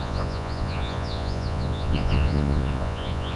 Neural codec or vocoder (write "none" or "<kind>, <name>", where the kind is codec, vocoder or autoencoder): vocoder, Vocos